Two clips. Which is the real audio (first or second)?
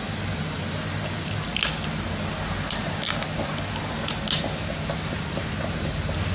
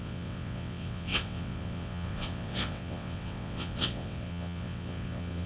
first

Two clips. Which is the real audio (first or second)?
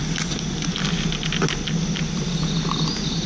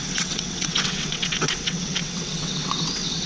first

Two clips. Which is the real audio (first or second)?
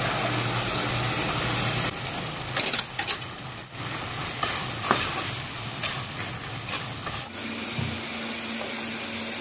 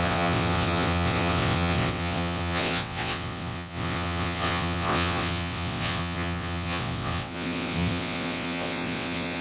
first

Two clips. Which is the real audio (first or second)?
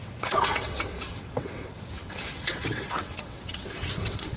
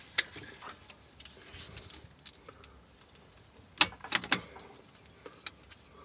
second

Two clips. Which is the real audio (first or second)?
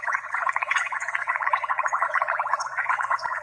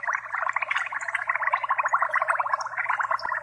second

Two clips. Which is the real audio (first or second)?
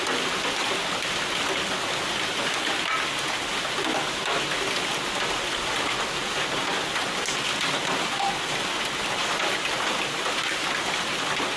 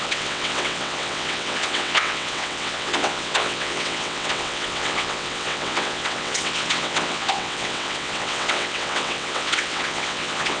first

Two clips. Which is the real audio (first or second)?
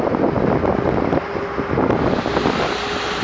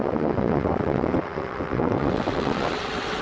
first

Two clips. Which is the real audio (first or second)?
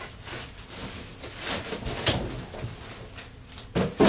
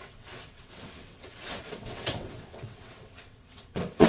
first